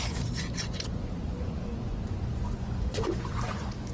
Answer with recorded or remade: remade